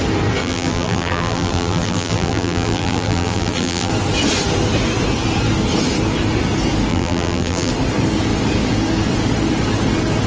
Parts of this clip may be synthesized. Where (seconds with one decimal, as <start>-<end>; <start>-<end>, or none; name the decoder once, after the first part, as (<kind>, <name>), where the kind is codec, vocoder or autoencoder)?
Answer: 0.4-3.9 (vocoder, BigVGAN v2); 6.9-7.7